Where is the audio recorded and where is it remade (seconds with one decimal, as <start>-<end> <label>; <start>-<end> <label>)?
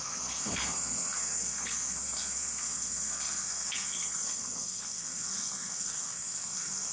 0.0-6.9 remade